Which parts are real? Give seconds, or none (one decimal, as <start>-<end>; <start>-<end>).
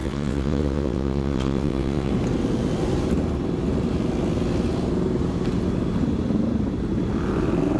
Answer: 2.1-7.8